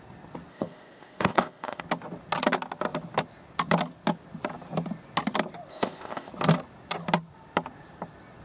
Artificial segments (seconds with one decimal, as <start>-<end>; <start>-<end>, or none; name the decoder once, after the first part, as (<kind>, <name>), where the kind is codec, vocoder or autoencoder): 0.5-1.8 (codec, ZipCodec); 5.7-6.3